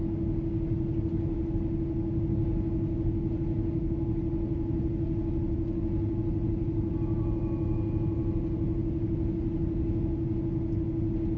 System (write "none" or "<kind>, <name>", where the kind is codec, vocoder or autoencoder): none